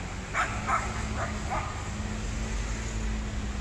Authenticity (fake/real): real